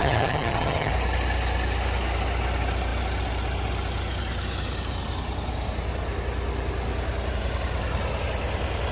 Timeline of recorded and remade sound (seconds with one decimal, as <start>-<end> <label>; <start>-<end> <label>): 0.0-0.9 remade; 0.9-8.9 recorded